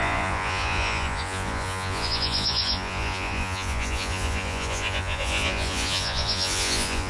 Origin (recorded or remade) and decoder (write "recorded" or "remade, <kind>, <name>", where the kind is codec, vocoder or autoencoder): remade, vocoder, Vocos